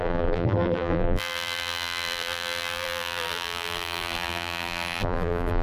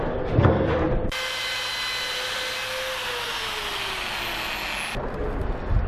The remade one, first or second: first